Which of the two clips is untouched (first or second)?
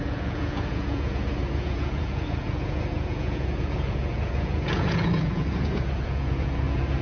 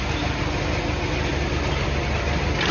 second